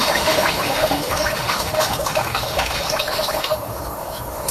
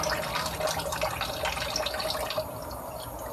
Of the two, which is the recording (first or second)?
second